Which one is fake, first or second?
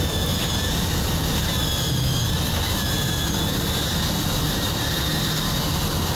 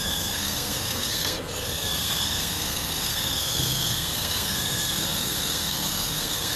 second